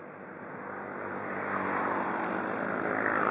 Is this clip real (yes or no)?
no